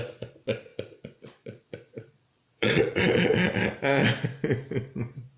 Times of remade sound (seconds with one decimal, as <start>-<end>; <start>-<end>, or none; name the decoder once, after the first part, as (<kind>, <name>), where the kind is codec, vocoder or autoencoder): 0.7-3.0 (vocoder, Vocos)